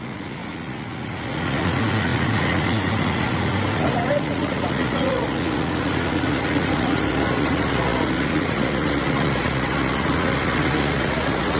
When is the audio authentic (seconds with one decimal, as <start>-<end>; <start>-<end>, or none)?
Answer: none